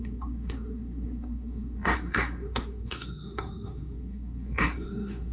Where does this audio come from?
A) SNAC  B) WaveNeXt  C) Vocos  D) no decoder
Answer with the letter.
A